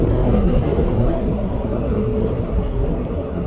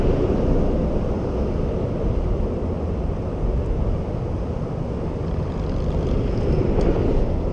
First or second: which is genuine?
second